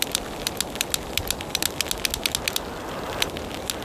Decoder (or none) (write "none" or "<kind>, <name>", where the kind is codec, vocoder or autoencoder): none